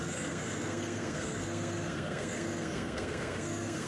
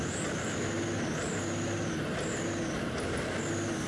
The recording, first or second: second